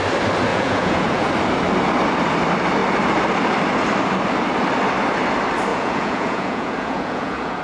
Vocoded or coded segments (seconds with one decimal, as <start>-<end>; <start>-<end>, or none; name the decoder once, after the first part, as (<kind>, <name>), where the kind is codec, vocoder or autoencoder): 0.5-1.3 (vocoder, Vocos); 5.7-7.6